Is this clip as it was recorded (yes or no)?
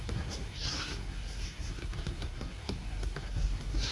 no